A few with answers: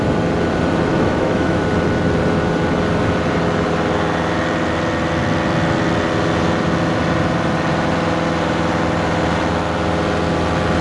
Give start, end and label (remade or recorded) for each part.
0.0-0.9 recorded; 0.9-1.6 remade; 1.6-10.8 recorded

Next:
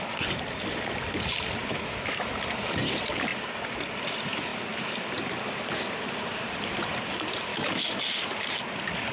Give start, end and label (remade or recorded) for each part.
0.0-1.6 recorded; 1.6-2.3 remade; 2.3-7.5 recorded; 7.5-8.0 remade; 8.0-9.1 recorded

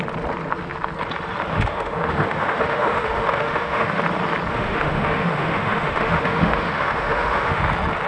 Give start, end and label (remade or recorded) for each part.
0.0-1.5 recorded; 1.5-4.0 remade; 4.0-4.5 recorded; 4.5-7.6 remade; 7.6-8.1 recorded

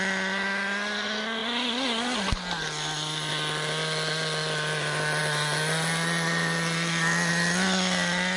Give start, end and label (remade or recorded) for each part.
0.0-8.4 recorded

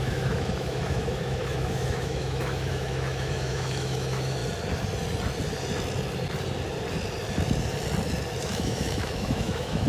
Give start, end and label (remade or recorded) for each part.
0.0-4.4 remade; 4.4-8.4 recorded; 8.4-9.9 remade